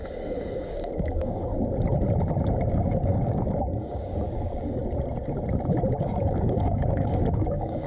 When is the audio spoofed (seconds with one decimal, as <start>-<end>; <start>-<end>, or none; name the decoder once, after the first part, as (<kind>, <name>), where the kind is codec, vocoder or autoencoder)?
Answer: 0.0-1.5 (codec, DAC); 2.7-4.8; 6.0-7.9